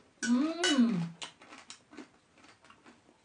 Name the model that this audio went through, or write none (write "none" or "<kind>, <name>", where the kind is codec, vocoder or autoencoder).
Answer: none